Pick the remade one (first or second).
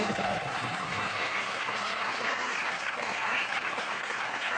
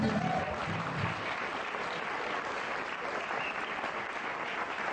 first